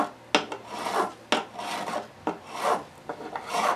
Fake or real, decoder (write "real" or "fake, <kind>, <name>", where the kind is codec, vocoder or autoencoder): real